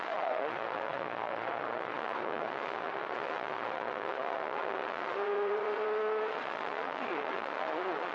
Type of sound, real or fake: fake